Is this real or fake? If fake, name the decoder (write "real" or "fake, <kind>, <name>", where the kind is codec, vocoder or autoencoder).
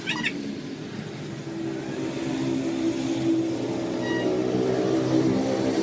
real